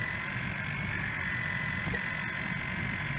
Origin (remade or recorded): recorded